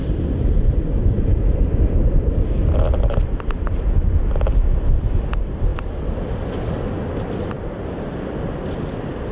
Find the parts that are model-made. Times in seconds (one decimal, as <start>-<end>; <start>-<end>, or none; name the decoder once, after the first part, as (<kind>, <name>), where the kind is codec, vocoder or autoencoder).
0.0-3.8 (vocoder, BigVGAN v2); 5.7-9.3

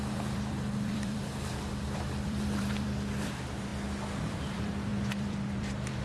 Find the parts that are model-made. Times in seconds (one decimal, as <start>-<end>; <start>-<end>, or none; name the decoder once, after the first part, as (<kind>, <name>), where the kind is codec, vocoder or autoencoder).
0.0-3.7 (vocoder, BigVGAN v2); 4.4-6.0

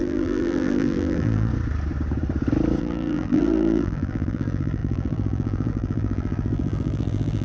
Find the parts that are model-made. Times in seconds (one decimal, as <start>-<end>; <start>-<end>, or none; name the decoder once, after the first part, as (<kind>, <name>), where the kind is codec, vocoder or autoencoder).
0.0-1.5 (vocoder, BigVGAN v2); 2.8-7.4

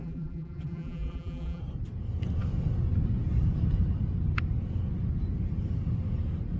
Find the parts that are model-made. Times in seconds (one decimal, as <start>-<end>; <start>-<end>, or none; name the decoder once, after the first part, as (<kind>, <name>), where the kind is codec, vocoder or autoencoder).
0.0-1.6 (vocoder, BigVGAN v2)

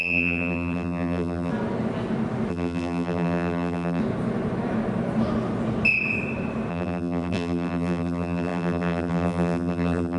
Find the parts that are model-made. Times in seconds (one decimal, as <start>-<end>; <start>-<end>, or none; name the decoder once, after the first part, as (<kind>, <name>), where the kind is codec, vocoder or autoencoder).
0.0-1.5 (vocoder, BigVGAN v2); 2.5-4.0; 6.7-10.2

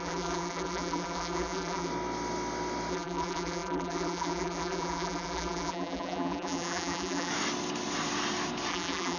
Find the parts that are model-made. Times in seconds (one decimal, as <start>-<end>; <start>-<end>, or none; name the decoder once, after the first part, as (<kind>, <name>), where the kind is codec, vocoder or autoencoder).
0.0-1.9 (vocoder, BigVGAN v2); 2.9-7.3; 8.7-9.2

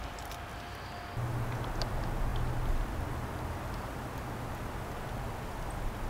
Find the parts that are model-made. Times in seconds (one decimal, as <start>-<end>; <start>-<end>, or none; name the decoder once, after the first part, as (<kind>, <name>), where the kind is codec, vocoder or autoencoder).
none